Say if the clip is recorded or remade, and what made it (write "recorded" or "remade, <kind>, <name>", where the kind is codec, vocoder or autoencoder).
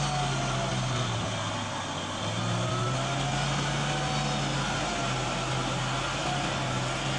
recorded